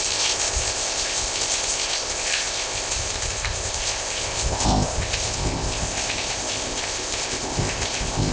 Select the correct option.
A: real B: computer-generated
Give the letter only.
B